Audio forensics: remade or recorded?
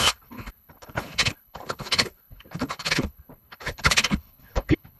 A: remade